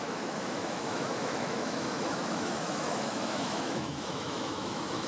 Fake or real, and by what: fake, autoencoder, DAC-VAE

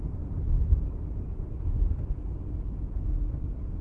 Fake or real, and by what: fake, vocoder, BigVGAN v2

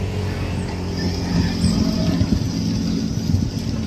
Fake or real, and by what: real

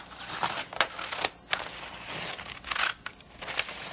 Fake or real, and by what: real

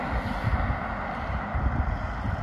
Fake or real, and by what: real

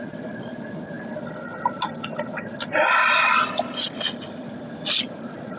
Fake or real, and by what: real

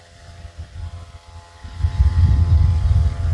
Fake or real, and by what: real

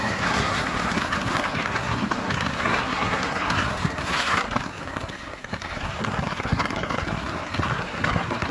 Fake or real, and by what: fake, codec, SNAC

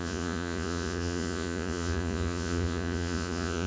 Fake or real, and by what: fake, vocoder, Vocos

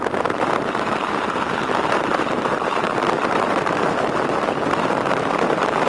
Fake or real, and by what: fake, vocoder, BigVGAN v2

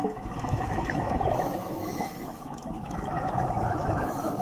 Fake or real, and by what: fake, autoencoder, DAC-VAE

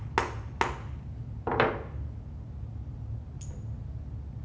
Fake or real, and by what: real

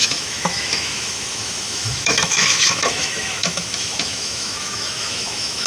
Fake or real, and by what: fake, autoencoder, DAC-VAE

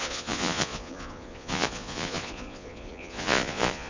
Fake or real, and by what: fake, vocoder, Vocos